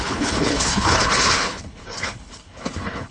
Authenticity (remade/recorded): remade